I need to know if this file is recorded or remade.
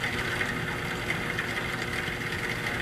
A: recorded